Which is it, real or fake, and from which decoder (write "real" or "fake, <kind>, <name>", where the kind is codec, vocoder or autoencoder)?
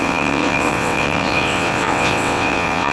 fake, vocoder, WaveNeXt